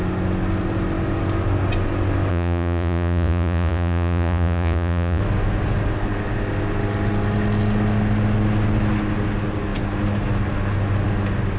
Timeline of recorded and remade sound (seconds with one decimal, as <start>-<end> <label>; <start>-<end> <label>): 0.0-2.3 recorded; 2.3-5.2 remade; 5.2-11.6 recorded

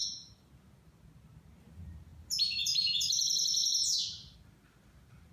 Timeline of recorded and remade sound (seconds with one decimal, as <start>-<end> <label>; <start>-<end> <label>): 0.0-5.3 recorded